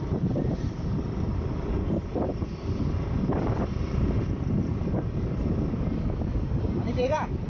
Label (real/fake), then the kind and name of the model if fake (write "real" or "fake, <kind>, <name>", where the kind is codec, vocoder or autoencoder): fake, vocoder, BigVGAN v2